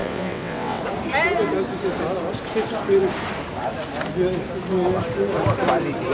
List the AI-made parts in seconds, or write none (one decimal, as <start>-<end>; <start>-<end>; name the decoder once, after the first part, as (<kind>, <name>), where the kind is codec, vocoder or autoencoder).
0.0-0.8 (vocoder, WaveNeXt)